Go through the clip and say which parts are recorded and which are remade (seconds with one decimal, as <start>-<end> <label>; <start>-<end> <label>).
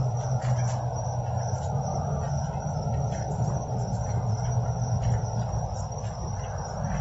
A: 0.0-7.0 recorded